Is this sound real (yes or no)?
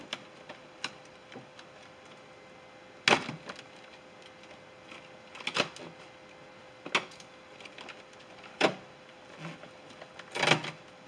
yes